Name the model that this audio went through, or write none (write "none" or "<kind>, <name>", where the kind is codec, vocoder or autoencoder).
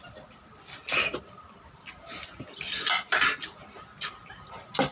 none